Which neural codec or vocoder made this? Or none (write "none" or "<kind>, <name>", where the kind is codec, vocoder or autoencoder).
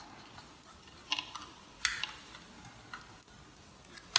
none